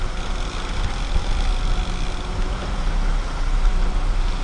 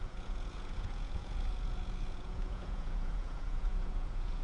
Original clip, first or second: first